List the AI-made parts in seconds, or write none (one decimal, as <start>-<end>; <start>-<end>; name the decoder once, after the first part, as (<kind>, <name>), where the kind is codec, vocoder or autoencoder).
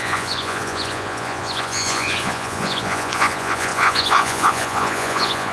0.0-5.5 (vocoder, Vocos)